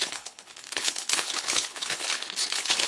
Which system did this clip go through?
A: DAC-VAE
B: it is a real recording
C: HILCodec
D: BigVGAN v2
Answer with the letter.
C